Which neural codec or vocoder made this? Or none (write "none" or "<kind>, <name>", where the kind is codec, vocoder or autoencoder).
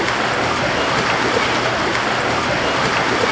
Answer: none